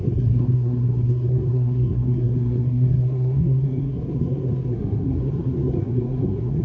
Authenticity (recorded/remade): remade